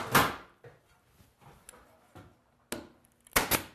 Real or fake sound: real